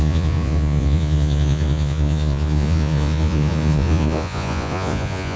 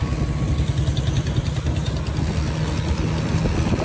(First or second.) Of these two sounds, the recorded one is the second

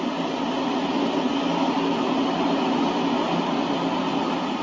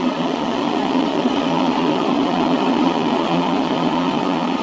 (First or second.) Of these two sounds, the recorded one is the first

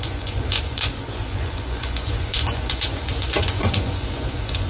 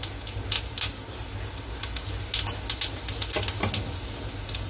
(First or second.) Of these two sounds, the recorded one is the second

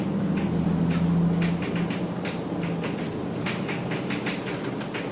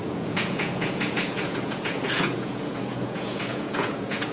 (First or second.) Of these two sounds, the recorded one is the first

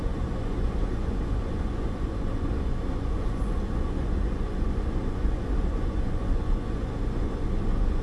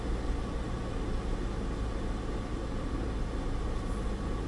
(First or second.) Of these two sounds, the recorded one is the second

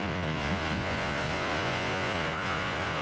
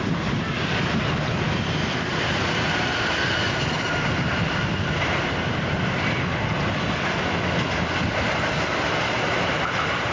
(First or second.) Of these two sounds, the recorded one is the second